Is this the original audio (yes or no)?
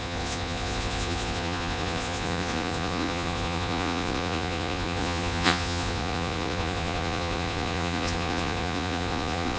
no